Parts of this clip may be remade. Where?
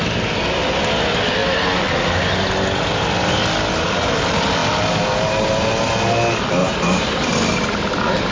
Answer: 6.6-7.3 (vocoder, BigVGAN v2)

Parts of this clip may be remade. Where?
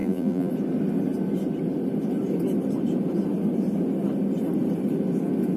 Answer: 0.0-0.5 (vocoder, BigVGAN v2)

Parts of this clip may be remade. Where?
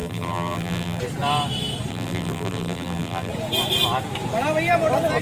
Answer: 0.0-1.0 (vocoder, BigVGAN v2); 1.9-3.3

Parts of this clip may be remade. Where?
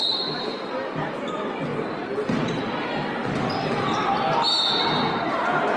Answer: 1.7-4.1 (vocoder, BigVGAN v2)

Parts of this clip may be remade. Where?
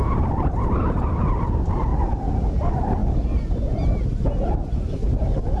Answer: 0.0-1.9 (vocoder, BigVGAN v2); 2.6-3.0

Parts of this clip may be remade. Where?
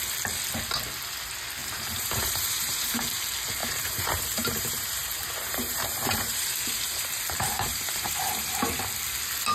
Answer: 1.6-3.0 (vocoder, BigVGAN v2); 3.6-8.8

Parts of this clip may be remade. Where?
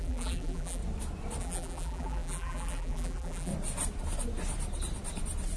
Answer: 0.0-0.8 (vocoder, BigVGAN v2); 1.4-3.5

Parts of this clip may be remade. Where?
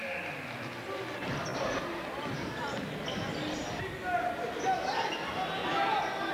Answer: none